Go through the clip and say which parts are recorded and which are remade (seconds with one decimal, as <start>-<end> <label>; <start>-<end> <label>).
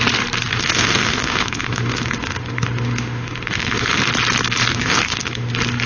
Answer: 0.0-0.5 recorded; 0.5-4.0 remade; 4.0-4.7 recorded; 4.7-5.5 remade; 5.5-5.9 recorded